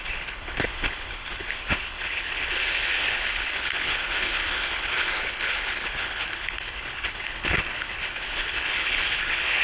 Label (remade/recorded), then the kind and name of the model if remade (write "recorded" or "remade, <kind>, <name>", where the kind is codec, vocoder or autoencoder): remade, codec, HILCodec